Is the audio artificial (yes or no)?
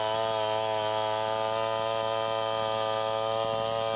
no